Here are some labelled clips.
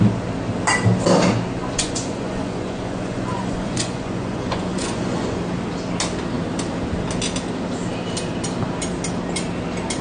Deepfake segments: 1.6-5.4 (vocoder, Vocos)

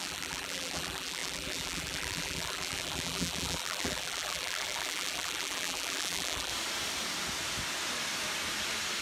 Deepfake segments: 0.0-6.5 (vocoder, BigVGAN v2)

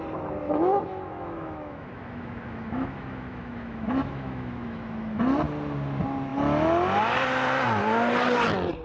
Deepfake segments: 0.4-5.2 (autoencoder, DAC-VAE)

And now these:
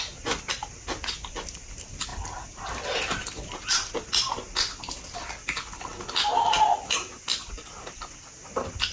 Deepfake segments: none

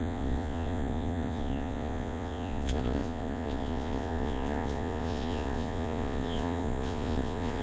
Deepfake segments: 0.0-7.6 (vocoder, Vocos)

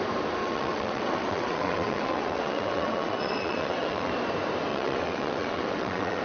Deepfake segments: 0.4-4.1 (vocoder, WaveNeXt); 4.7-6.2

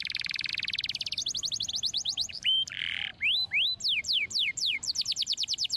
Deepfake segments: 0.0-0.5 (vocoder, BigVGAN v2); 1.7-3.1; 4.0-5.8